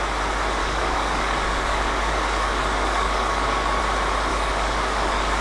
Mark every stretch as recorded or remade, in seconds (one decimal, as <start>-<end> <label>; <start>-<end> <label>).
0.0-0.6 recorded; 0.6-3.8 remade; 3.8-4.3 recorded; 4.3-5.4 remade

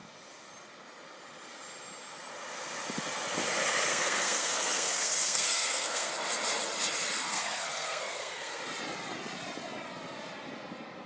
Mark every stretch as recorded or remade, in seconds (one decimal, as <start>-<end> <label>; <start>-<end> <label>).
0.0-3.9 recorded; 3.9-6.1 remade; 6.1-7.3 recorded; 7.3-8.6 remade; 8.6-11.1 recorded

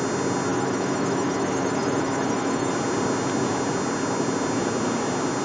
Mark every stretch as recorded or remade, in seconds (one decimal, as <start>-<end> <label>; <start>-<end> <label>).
0.0-0.5 recorded; 0.5-2.7 remade; 2.7-5.4 recorded

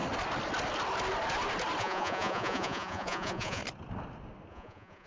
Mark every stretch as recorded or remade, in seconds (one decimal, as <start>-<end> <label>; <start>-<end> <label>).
0.0-1.8 recorded; 1.8-3.6 remade; 3.6-4.5 recorded; 4.5-5.1 remade

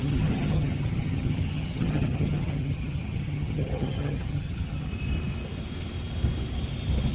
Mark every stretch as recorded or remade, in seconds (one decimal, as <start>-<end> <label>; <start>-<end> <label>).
0.0-4.9 remade; 4.9-7.1 recorded